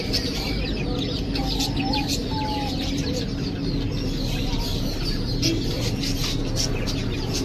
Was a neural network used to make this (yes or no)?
no